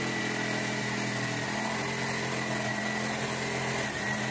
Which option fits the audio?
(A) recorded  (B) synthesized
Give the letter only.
A